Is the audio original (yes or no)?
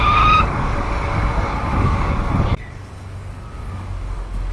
no